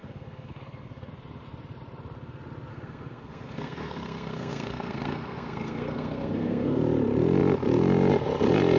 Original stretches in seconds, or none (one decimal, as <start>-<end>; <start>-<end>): 1.1-2.7; 6.8-8.8